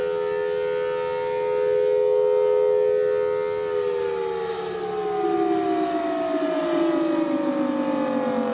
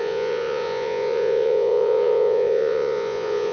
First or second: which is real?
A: first